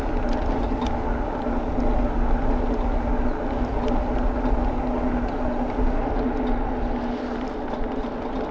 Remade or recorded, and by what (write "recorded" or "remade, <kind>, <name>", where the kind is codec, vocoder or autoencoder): recorded